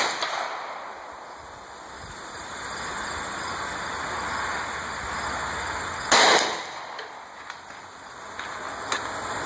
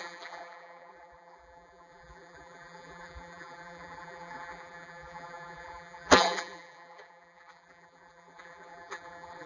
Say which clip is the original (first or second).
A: first